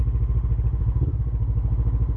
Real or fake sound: real